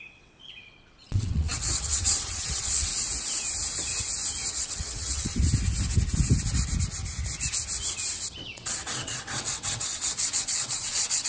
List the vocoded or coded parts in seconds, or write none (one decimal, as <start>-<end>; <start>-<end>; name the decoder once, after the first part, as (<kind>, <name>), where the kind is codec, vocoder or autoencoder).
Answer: 0.0-2.9 (vocoder, WaveNeXt); 4.5-5.3; 8.3-11.3